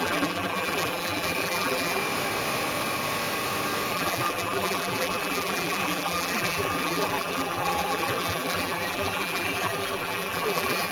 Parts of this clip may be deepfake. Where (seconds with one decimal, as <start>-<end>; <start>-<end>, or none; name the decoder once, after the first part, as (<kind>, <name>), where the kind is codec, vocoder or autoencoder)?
0.0-2.0 (vocoder, BigVGAN v2); 3.9-10.9